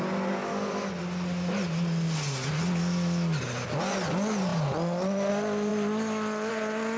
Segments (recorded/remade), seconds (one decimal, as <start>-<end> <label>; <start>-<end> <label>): 0.0-7.0 recorded

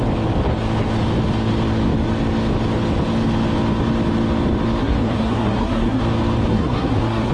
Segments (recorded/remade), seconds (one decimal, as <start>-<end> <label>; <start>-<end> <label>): 0.0-4.8 recorded; 4.8-6.0 remade; 6.0-6.5 recorded; 6.5-7.3 remade

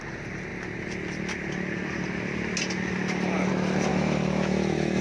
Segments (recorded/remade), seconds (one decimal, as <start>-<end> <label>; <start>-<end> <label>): 0.0-3.9 recorded; 3.9-5.0 remade

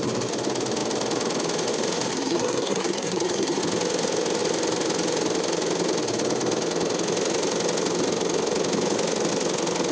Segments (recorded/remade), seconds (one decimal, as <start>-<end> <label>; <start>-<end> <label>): 0.0-2.1 recorded; 2.1-3.6 remade; 3.6-9.9 recorded

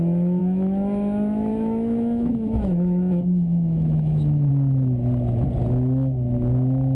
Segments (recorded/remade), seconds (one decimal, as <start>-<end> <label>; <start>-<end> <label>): 0.0-0.4 recorded; 0.4-4.5 remade; 4.5-6.9 recorded

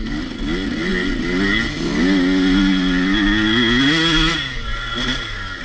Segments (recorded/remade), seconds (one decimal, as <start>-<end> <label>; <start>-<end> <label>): 0.0-5.6 recorded